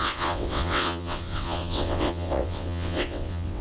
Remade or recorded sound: remade